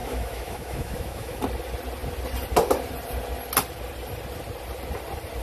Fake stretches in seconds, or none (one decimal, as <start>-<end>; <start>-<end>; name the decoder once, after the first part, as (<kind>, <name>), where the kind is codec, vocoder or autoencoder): 0.0-1.4 (autoencoder, DAC-VAE)